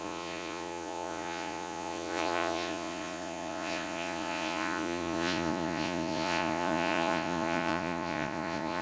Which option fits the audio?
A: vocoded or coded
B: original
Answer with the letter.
A